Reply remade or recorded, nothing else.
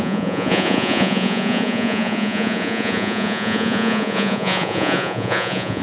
remade